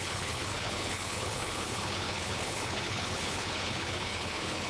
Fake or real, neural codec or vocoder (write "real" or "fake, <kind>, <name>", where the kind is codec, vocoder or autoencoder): fake, codec, HILCodec